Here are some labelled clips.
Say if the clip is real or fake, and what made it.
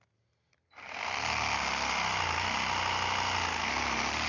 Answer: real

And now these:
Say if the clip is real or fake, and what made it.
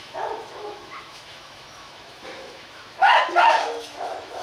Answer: fake, autoencoder, DAC-VAE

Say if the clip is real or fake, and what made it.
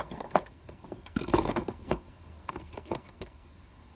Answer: fake, codec, SNAC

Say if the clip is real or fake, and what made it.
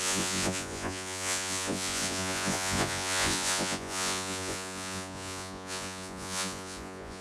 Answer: fake, vocoder, Vocos